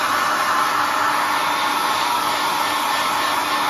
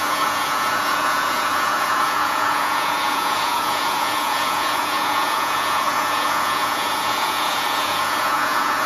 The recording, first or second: first